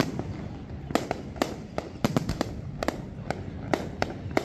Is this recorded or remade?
recorded